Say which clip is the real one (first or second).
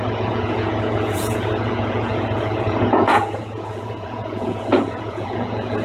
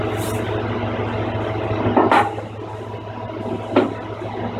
second